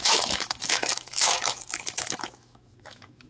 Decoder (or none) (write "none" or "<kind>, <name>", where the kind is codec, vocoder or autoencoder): autoencoder, DAC-VAE